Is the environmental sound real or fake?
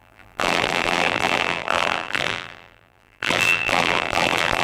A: fake